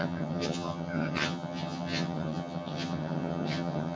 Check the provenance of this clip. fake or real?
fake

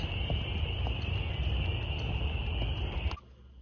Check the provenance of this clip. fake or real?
real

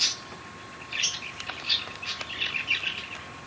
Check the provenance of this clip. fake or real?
real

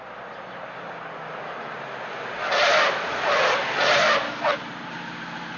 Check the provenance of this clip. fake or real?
real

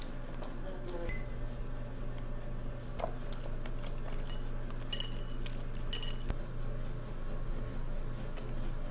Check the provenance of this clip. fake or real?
real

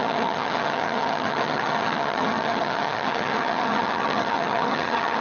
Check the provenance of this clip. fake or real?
fake